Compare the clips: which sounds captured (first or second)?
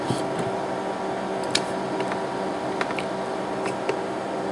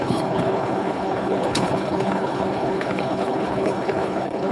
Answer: first